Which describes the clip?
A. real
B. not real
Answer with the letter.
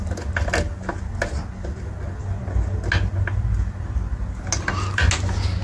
A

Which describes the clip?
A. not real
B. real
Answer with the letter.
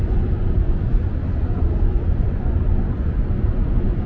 A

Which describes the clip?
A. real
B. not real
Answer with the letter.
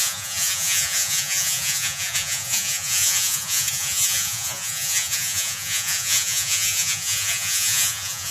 B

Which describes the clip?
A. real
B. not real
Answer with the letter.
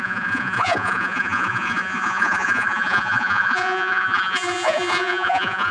B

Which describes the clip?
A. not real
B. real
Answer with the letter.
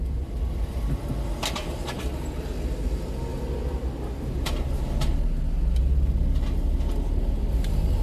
B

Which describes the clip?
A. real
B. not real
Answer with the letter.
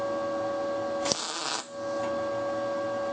A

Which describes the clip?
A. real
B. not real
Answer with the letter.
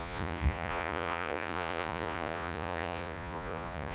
B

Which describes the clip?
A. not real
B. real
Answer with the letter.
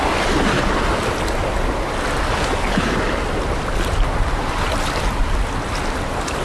B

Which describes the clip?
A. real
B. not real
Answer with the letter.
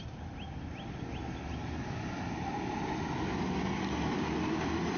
A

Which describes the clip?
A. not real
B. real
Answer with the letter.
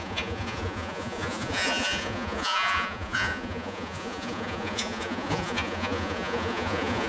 A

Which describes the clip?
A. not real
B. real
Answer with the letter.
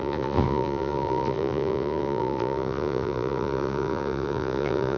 A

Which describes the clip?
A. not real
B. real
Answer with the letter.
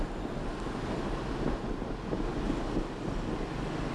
B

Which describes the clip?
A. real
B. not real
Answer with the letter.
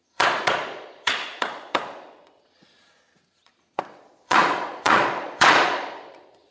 B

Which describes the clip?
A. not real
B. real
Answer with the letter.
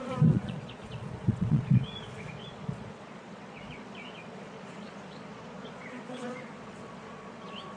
A